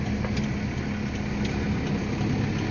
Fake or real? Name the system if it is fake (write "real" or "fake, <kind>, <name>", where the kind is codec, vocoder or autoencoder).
real